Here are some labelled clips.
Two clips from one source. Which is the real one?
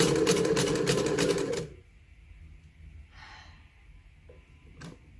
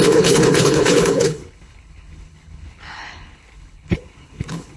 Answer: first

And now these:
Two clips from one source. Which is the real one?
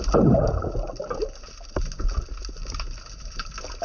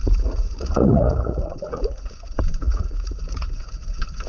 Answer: first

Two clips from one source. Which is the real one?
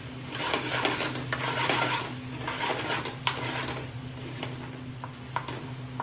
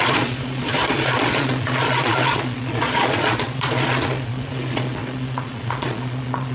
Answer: first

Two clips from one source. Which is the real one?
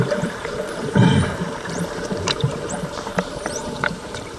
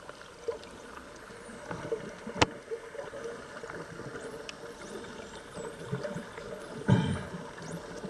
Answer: second